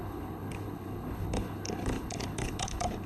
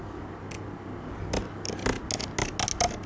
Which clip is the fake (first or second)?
first